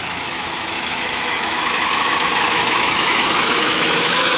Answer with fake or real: fake